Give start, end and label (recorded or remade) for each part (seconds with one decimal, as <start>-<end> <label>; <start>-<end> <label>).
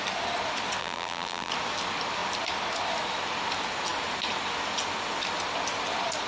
0.0-0.8 recorded; 0.8-1.5 remade; 1.5-6.3 recorded